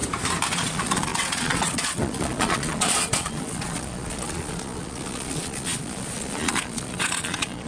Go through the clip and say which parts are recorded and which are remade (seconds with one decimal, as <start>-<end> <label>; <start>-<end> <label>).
0.0-0.5 recorded; 0.5-7.7 remade